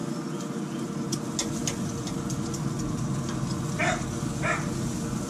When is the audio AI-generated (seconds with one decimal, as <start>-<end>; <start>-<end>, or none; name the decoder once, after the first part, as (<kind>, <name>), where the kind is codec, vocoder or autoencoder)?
none

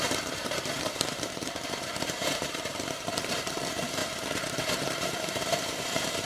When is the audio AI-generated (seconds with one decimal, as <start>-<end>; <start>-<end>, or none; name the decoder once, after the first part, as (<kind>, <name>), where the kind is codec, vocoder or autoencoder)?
0.0-6.3 (vocoder, BigVGAN v2)

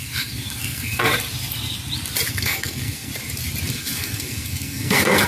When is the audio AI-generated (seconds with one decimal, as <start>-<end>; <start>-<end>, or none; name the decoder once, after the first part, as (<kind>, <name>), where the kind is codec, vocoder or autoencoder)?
0.0-1.1 (codec, SNAC); 2.3-3.1; 3.7-5.3

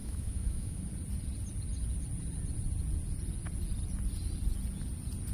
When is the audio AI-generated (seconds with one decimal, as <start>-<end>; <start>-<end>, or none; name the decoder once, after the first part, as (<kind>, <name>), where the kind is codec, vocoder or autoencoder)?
0.0-0.8 (autoencoder, DAC-VAE)

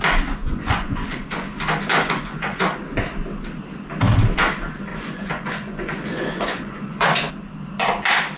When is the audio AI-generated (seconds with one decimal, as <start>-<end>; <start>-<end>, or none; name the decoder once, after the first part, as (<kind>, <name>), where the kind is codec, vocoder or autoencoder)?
0.4-1.5 (vocoder, Vocos); 1.9-2.6; 4.9-7.3

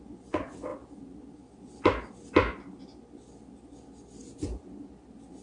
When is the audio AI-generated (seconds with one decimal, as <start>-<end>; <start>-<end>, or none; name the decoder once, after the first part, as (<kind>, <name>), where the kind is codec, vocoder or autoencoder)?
none

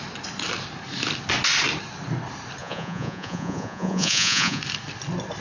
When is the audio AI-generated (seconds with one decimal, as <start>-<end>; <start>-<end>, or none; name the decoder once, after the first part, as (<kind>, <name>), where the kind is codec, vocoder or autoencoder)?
2.6-4.6 (vocoder, Vocos)